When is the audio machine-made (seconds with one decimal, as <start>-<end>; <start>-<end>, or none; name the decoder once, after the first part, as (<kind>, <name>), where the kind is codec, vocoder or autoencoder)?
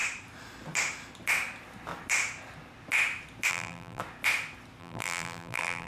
3.5-4.0 (vocoder, BigVGAN v2); 4.8-5.9